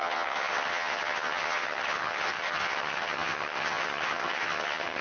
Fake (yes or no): yes